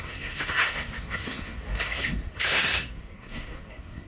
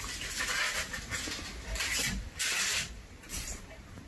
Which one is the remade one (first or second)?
first